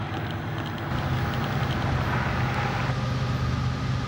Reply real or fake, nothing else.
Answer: real